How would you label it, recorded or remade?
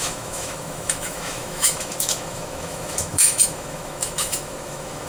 remade